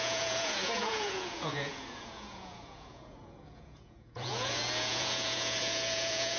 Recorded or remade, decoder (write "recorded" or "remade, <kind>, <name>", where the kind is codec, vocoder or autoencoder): remade, vocoder, Vocos